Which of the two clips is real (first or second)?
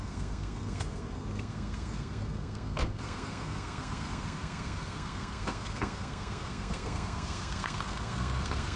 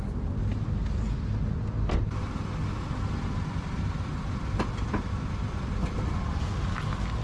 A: second